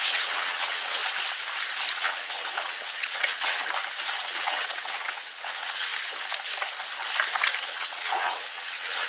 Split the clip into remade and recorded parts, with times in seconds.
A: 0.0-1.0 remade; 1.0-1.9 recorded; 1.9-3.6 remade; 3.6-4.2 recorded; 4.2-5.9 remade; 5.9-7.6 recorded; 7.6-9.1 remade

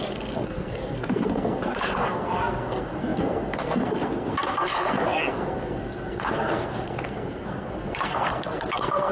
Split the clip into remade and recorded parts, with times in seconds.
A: 0.0-9.1 remade

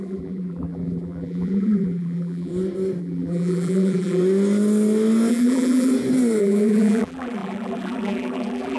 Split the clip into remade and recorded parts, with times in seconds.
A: 0.0-2.5 remade; 2.5-3.0 recorded; 3.0-4.2 remade; 4.2-5.3 recorded; 5.3-5.9 remade; 5.9-6.4 recorded; 6.4-8.8 remade